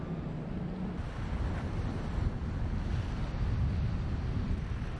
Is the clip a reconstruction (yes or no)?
no